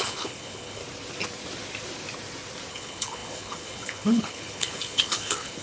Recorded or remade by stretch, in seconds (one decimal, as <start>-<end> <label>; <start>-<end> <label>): 0.0-0.8 remade; 0.8-2.7 recorded; 2.7-5.6 remade